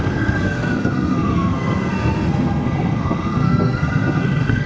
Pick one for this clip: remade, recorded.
remade